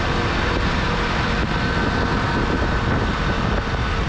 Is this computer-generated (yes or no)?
no